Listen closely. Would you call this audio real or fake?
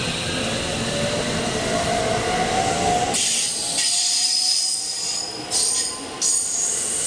real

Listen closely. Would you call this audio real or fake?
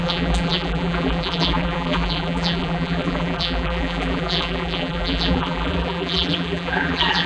fake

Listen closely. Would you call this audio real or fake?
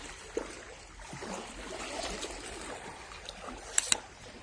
fake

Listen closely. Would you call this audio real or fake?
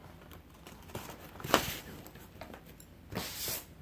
fake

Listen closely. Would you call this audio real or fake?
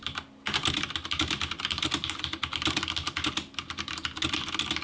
real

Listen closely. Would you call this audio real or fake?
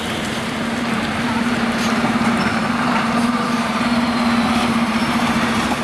fake